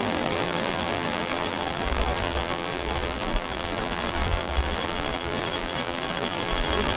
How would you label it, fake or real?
fake